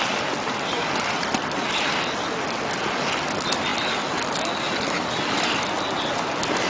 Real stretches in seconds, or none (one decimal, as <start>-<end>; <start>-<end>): 0.0-6.7

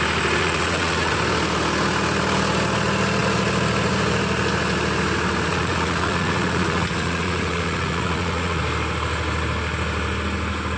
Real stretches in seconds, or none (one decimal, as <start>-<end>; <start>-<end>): 0.0-0.4; 1.1-5.5; 8.6-10.8